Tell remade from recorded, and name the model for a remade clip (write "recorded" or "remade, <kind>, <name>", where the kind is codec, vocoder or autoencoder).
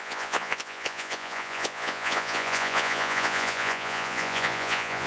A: remade, vocoder, Vocos